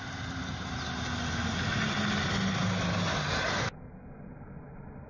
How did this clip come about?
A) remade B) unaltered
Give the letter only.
B